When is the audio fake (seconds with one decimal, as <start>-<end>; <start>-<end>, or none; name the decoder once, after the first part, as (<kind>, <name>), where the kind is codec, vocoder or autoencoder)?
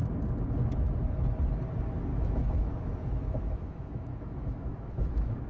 2.1-5.5 (autoencoder, DAC-VAE)